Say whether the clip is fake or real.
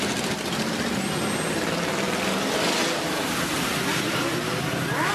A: real